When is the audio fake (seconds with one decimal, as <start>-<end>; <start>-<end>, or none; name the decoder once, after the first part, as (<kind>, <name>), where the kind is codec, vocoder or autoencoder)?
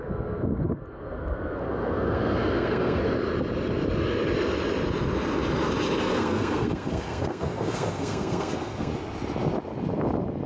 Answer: 0.0-3.0 (codec, SNAC); 6.0-8.9